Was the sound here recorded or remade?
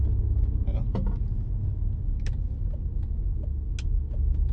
recorded